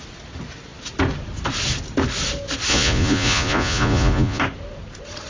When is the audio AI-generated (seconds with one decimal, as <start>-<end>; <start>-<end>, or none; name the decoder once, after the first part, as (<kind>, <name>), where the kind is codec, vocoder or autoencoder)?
2.7-4.4 (vocoder, Vocos)